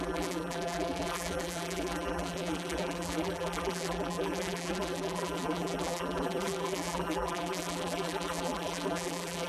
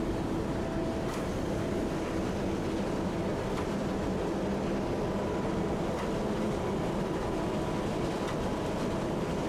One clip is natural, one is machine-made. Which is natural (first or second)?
second